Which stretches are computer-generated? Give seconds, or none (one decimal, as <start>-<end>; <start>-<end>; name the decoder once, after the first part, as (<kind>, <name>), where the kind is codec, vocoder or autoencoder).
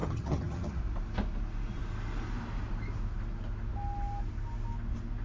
0.0-0.8 (vocoder, HiFi-GAN)